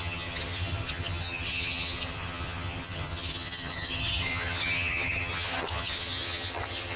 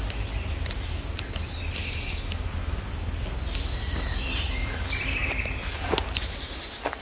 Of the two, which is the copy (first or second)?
first